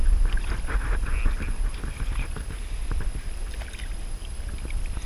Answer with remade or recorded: remade